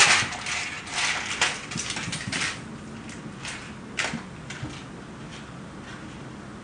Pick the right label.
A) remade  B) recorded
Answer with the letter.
B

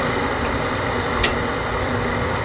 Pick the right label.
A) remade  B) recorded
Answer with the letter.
B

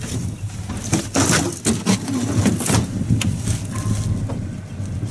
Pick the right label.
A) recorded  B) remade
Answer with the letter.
A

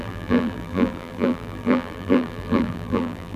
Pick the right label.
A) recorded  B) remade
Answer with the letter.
B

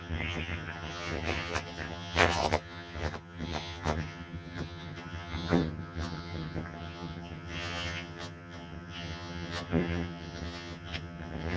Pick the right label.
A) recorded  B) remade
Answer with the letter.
B